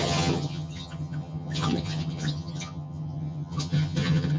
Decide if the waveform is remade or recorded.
remade